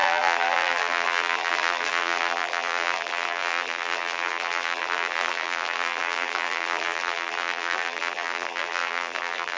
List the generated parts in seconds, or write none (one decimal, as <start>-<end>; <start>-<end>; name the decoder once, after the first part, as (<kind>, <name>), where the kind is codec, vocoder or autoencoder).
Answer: 0.0-9.6 (vocoder, BigVGAN v2)